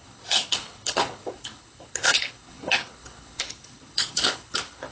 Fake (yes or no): yes